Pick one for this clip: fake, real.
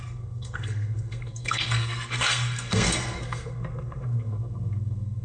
fake